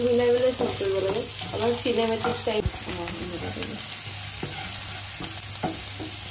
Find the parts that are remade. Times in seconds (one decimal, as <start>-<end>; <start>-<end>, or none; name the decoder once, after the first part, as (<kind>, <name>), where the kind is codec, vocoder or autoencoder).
none